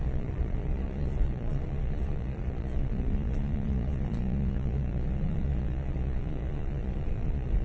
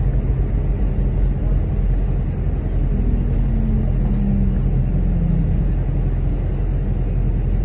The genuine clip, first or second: second